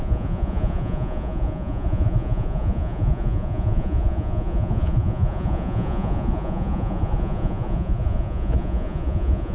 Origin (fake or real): fake